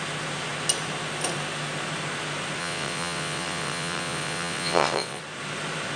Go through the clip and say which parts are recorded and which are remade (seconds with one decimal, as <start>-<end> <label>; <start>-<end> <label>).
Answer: 0.0-2.6 recorded; 2.6-5.2 remade; 5.2-6.0 recorded